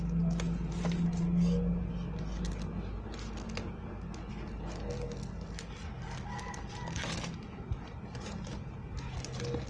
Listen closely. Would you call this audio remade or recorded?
recorded